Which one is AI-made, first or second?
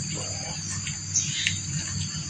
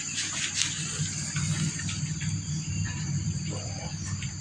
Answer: second